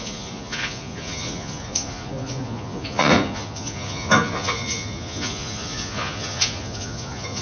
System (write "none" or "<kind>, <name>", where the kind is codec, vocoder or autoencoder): vocoder, Vocos